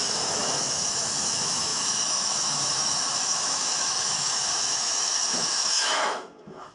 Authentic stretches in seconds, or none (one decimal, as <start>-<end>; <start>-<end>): none